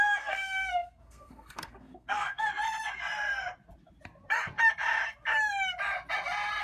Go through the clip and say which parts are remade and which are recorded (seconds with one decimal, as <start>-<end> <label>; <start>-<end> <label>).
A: 0.0-2.5 remade; 2.5-6.6 recorded